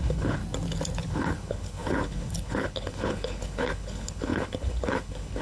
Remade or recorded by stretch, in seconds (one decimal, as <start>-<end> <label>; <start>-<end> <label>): 0.0-0.4 remade; 0.4-1.0 recorded; 1.0-5.4 remade